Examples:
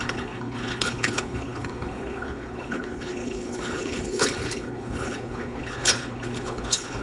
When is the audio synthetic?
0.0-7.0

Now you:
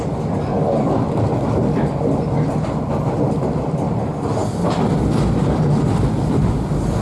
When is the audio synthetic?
none

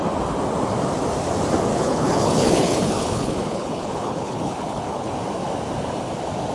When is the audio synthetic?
1.7-5.1

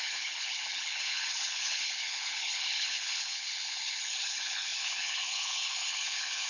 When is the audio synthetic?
0.0-6.5

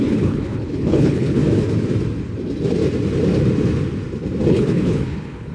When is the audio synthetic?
0.0-1.4; 4.5-5.5

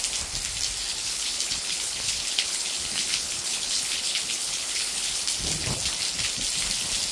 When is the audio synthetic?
0.9-5.2

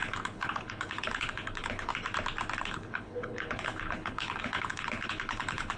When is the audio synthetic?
0.0-1.9; 2.6-5.8

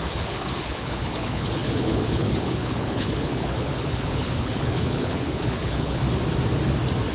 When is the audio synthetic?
0.0-6.0